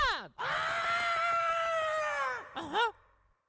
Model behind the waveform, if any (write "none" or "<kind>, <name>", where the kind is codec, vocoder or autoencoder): none